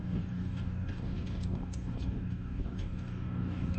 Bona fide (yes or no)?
no